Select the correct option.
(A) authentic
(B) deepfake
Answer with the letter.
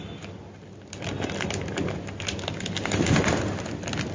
A